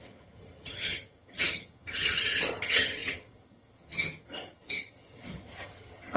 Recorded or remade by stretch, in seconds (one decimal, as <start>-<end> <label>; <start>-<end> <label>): 0.0-6.2 remade